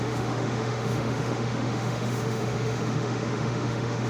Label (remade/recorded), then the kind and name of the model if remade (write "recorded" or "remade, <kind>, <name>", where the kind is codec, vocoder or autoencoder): remade, autoencoder, DAC-VAE